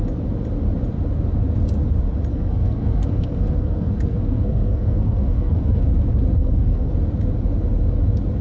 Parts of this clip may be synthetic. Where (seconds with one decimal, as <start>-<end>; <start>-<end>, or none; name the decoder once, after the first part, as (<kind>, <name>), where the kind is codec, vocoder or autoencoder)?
2.3-5.9 (codec, SNAC); 6.4-6.9